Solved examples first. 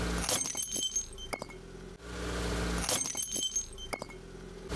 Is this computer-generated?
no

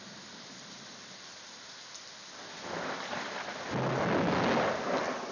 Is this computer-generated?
no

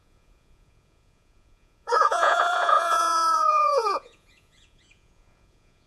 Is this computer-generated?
yes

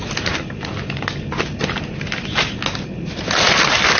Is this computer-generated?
no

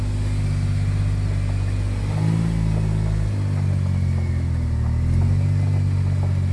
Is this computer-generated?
no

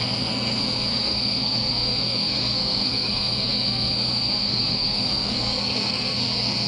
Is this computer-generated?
yes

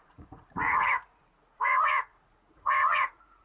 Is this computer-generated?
yes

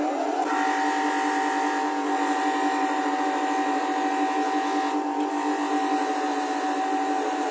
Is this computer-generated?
no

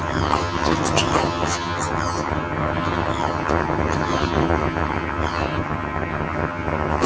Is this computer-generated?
yes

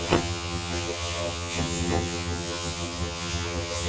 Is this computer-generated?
yes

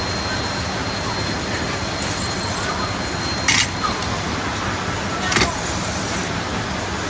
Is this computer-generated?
no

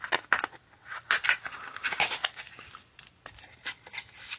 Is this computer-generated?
no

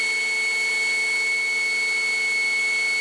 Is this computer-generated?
no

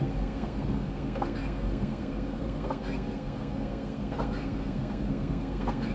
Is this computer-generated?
yes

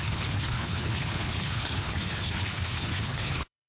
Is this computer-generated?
yes